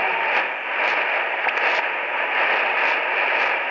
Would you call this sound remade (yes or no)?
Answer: no